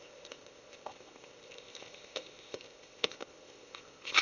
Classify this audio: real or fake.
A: fake